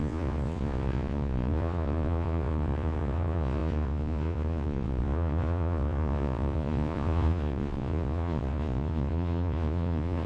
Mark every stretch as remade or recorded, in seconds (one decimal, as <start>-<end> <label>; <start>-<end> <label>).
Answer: 0.0-10.3 remade